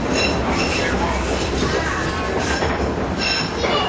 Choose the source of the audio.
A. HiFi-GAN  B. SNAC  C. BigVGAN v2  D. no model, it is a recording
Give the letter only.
D